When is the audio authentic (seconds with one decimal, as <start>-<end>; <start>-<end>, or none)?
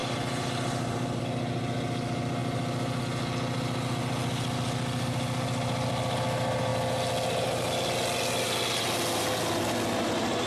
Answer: 1.2-10.5